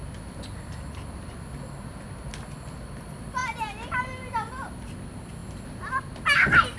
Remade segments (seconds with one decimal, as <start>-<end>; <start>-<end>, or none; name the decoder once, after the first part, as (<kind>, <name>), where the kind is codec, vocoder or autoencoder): none